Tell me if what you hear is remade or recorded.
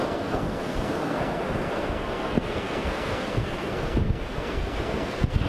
remade